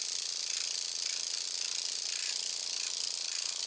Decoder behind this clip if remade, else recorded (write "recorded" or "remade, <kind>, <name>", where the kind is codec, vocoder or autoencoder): recorded